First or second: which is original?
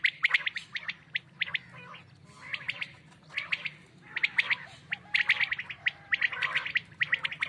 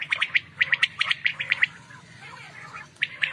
first